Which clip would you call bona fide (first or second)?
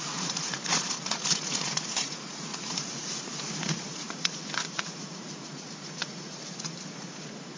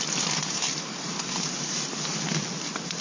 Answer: second